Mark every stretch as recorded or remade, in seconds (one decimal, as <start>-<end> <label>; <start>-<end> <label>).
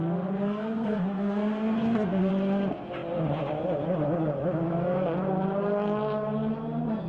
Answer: 0.0-0.4 recorded; 0.4-2.3 remade; 2.3-7.1 recorded